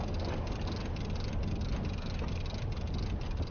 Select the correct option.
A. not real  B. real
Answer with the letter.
B